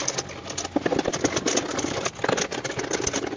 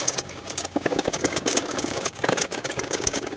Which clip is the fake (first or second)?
second